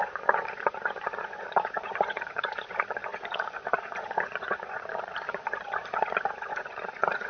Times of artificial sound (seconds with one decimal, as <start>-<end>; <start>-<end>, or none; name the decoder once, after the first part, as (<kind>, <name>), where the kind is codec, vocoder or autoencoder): 0.0-7.3 (vocoder, Vocos)